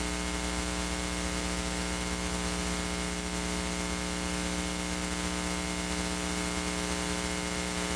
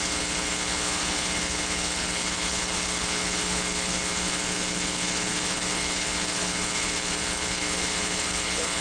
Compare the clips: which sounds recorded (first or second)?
first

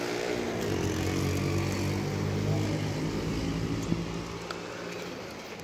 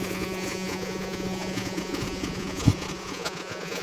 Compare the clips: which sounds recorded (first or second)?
first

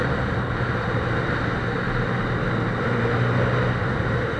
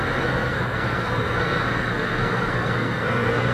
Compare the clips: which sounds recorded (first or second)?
first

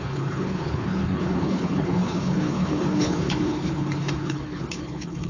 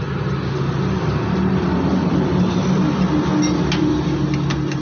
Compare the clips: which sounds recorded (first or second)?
second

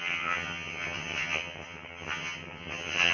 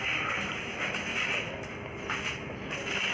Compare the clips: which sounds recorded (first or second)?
second